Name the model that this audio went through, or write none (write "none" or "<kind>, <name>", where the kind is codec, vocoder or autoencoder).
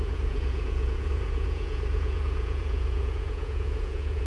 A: vocoder, Vocos